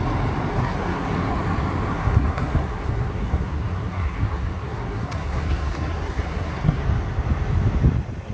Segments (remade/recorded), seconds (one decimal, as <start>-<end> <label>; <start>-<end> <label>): 0.0-0.5 recorded; 0.5-1.3 remade; 1.3-1.9 recorded; 1.9-6.8 remade; 6.8-8.3 recorded